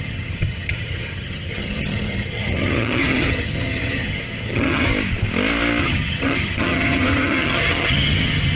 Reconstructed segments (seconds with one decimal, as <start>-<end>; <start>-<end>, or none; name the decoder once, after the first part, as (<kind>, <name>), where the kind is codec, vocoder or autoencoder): 0.0-4.9 (vocoder, HiFi-GAN); 5.8-8.6

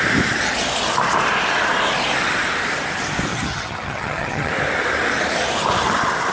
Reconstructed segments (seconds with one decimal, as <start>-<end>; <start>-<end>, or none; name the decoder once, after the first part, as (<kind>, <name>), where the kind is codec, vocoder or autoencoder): 3.3-4.5 (vocoder, HiFi-GAN)

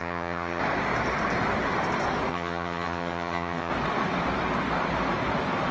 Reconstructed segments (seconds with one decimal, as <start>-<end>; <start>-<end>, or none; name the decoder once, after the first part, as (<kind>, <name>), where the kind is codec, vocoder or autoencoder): 0.0-0.6 (vocoder, HiFi-GAN); 2.3-3.7

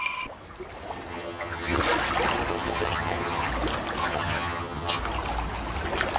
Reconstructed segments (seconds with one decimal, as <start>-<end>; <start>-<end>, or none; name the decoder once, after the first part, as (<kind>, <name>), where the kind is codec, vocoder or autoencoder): 1.1-1.8 (vocoder, HiFi-GAN); 2.5-3.5; 4.0-5.0

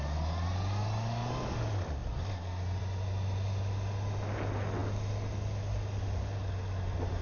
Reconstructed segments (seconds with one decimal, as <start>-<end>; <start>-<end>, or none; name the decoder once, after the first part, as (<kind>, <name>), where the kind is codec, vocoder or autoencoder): none